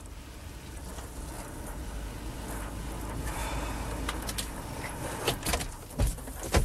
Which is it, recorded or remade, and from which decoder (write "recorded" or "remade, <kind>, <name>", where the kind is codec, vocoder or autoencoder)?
recorded